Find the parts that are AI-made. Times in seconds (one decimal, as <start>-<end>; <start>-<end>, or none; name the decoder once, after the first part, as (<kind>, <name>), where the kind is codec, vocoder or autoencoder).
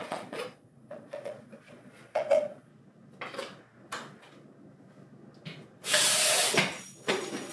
0.0-2.7 (vocoder, Vocos)